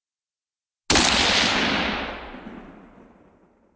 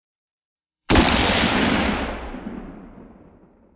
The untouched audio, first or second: first